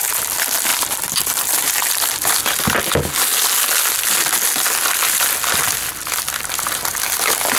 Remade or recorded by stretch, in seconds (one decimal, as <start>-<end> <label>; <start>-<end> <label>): 0.0-0.7 recorded; 0.7-2.0 remade; 2.0-7.6 recorded